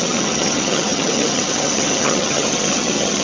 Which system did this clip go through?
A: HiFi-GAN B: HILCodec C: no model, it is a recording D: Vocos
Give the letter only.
A